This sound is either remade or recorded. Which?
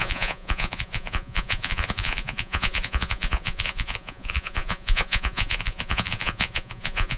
remade